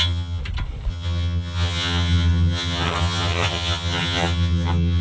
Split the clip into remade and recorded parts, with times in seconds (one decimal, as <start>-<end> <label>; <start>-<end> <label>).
0.0-0.4 remade; 0.4-0.9 recorded; 0.9-5.0 remade